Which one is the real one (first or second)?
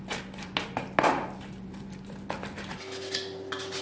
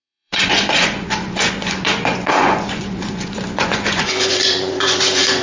first